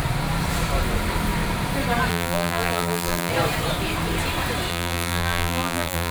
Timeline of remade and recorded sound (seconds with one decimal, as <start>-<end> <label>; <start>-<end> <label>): 0.0-2.1 recorded; 2.1-3.3 remade; 3.3-4.7 recorded; 4.7-6.1 remade